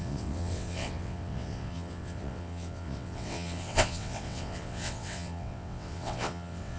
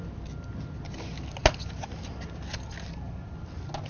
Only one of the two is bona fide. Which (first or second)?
second